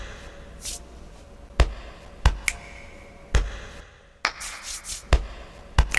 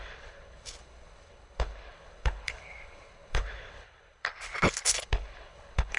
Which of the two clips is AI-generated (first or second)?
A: second